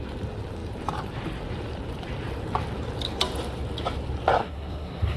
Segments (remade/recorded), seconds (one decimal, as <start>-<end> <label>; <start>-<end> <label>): 0.0-4.4 recorded; 4.4-5.2 remade